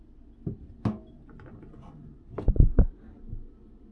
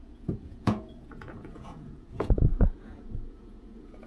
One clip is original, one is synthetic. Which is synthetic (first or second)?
second